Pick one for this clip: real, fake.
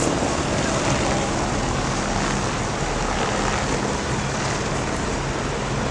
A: real